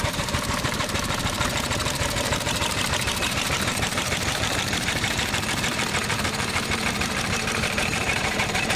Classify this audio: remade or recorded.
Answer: remade